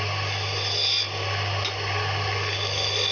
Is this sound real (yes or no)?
yes